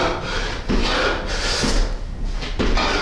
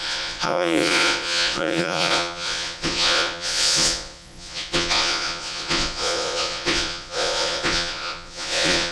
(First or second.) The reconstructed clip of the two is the second